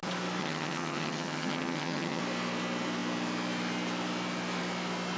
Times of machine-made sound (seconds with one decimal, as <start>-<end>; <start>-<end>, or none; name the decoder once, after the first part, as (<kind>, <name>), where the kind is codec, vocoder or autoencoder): 0.4-2.2 (vocoder, HiFi-GAN)